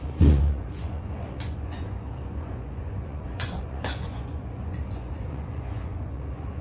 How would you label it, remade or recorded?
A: remade